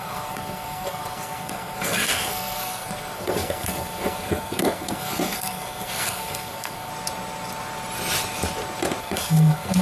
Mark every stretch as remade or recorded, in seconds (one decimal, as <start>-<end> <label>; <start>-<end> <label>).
0.0-6.9 remade; 6.9-9.0 recorded; 9.0-9.8 remade